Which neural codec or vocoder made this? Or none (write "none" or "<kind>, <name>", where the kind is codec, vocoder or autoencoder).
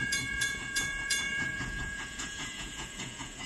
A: vocoder, Vocos